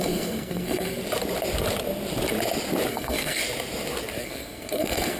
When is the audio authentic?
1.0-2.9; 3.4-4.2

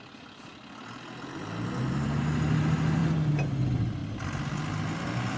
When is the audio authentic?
0.0-5.4

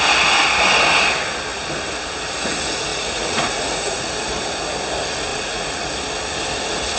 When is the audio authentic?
0.0-2.9; 4.1-5.3; 5.9-7.0

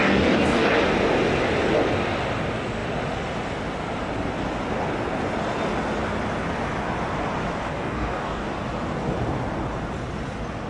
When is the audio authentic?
0.7-7.7; 8.5-10.7

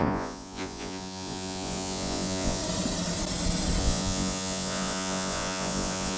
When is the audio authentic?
2.6-3.8

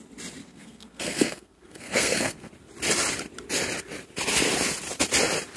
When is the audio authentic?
0.0-0.4; 2.5-5.6

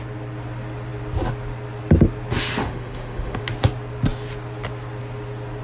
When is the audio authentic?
0.0-2.6; 3.4-5.6